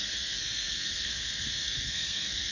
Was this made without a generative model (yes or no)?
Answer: no